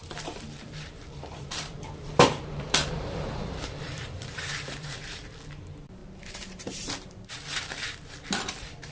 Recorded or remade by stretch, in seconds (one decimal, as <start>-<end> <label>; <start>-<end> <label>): 0.0-4.9 remade; 4.9-6.0 recorded; 6.0-7.3 remade; 7.3-8.9 recorded